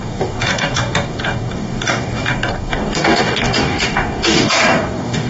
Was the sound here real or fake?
fake